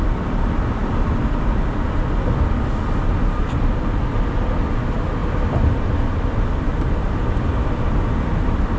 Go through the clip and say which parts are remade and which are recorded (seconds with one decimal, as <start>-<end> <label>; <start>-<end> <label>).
0.0-8.8 remade